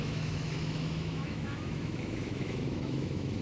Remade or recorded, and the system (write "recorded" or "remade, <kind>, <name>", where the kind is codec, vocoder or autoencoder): remade, autoencoder, DAC-VAE